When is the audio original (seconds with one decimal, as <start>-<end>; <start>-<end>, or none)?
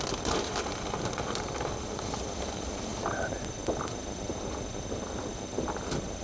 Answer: 0.0-6.2